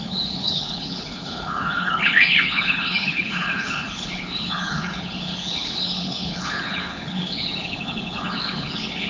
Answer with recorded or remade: remade